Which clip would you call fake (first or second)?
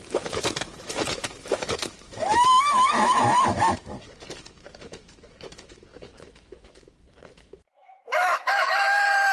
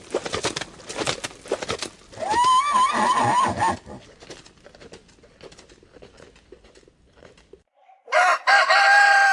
first